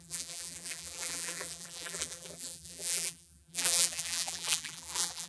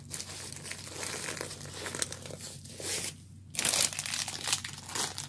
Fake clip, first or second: first